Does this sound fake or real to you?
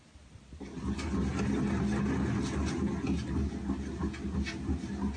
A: real